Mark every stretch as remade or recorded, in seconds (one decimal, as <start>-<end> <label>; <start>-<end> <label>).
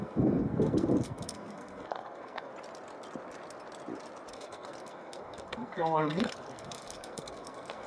0.0-2.5 remade; 2.5-4.3 recorded; 4.3-7.9 remade